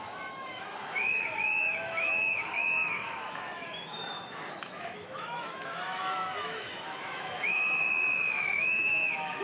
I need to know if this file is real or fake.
fake